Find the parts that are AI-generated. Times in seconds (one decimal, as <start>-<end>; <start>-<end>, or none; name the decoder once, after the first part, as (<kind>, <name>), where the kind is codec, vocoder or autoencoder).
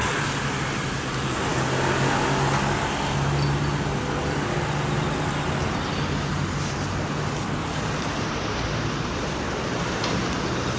7.6-10.3 (vocoder, BigVGAN v2)